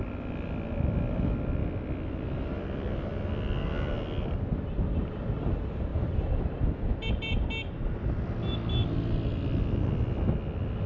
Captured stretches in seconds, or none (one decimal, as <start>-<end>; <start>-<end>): 0.0-5.9; 6.6-10.9